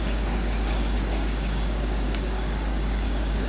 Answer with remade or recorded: remade